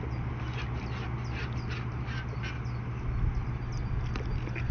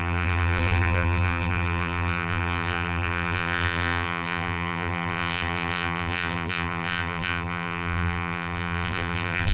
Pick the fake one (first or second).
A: second